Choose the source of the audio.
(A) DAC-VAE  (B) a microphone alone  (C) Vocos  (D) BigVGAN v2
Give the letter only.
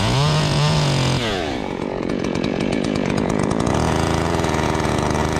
C